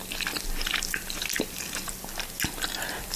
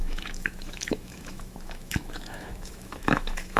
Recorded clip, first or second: first